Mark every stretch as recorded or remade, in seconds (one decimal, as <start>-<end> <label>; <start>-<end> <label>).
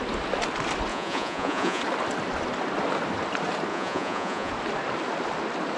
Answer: 0.0-0.9 recorded; 0.9-1.8 remade; 1.8-3.7 recorded; 3.7-4.5 remade; 4.5-5.8 recorded